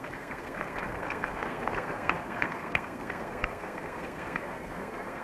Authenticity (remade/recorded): remade